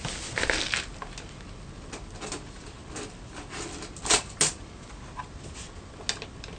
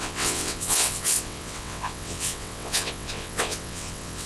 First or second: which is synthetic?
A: second